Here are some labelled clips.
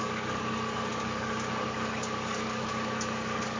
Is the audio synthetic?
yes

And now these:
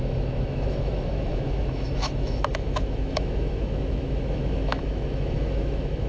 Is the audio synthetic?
yes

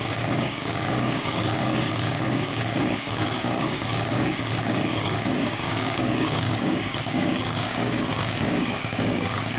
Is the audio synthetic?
yes